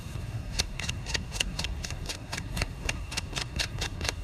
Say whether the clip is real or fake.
fake